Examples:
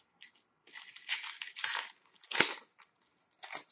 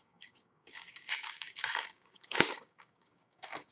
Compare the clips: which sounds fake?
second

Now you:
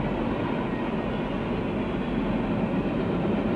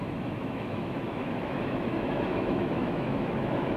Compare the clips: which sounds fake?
second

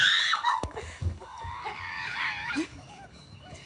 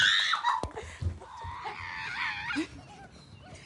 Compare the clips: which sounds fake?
first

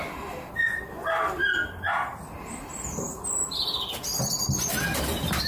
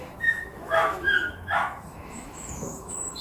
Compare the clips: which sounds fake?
second